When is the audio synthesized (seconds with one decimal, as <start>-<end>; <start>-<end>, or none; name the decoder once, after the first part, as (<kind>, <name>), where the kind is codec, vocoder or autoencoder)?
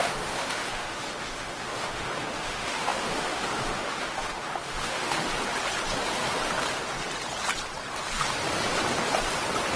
0.0-5.3 (autoencoder, DAC-VAE)